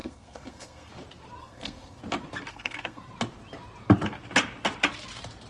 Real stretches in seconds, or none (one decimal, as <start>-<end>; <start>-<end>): 0.9-1.4; 2.0-2.5; 3.0-5.5